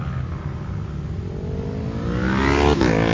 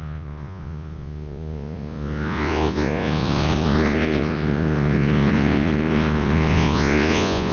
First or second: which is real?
first